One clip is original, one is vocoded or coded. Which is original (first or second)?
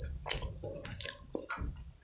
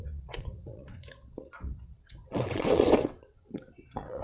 first